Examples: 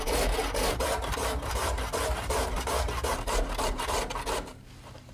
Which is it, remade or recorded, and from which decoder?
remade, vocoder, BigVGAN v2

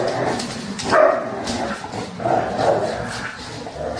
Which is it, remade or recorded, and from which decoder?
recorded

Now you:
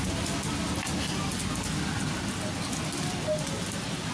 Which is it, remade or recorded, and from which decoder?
recorded